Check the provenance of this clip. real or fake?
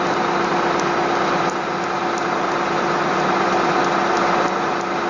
real